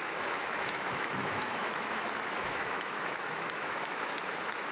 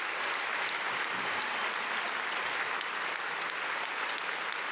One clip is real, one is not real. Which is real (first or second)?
second